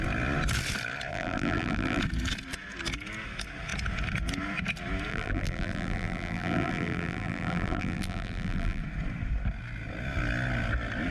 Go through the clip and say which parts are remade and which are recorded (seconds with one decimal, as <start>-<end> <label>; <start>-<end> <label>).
0.0-1.1 recorded; 1.1-2.0 remade; 2.0-5.1 recorded; 5.1-8.8 remade; 8.8-11.1 recorded